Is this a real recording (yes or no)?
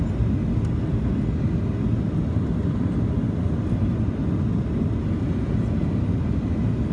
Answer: yes